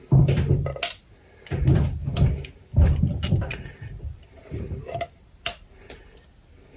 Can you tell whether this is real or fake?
real